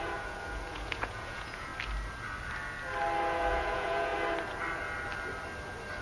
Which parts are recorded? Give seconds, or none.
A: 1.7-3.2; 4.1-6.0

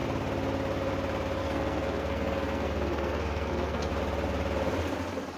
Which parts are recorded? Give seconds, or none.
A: 0.0-1.4; 3.9-5.4

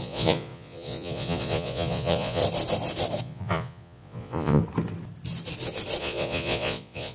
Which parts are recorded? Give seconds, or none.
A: 2.4-3.2; 4.6-6.0